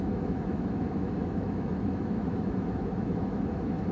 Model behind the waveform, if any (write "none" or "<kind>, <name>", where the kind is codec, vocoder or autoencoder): autoencoder, DAC-VAE